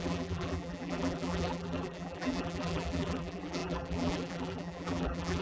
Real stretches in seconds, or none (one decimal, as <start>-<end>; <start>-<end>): none